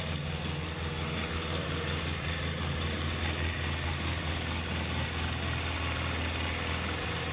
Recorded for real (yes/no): yes